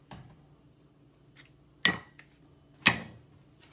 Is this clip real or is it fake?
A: real